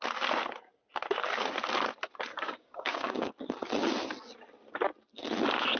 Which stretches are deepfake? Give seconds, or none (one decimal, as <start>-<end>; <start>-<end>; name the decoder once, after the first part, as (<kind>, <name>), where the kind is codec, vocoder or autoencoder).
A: 2.3-3.3 (codec, DAC)